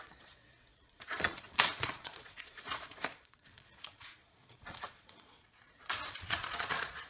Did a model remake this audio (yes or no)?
yes